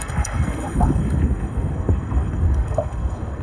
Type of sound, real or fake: fake